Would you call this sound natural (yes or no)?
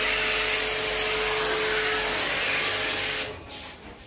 yes